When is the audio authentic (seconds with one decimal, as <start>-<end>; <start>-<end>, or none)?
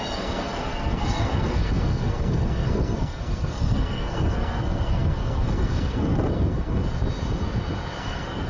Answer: 6.8-8.0